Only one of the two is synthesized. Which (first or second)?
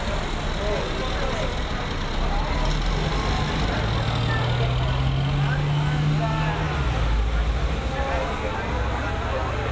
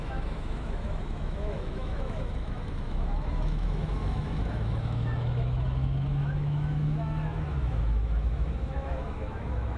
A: second